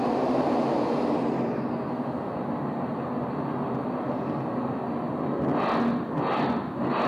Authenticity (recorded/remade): recorded